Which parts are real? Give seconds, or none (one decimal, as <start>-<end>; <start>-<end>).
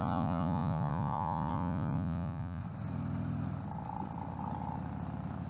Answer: 2.6-5.5